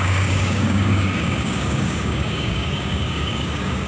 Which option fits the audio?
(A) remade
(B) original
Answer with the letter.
A